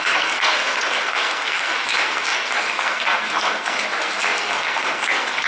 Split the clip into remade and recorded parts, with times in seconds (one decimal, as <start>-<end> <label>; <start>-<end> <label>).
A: 0.0-5.5 remade